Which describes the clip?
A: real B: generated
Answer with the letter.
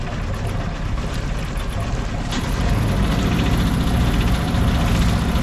A